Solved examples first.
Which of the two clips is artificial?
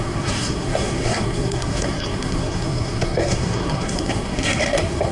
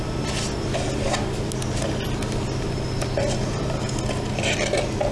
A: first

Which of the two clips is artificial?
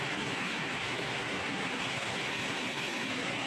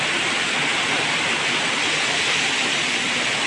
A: first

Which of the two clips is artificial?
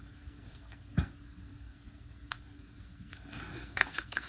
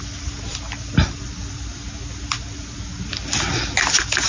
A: first